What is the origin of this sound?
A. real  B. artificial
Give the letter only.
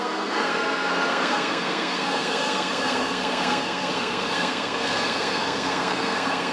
B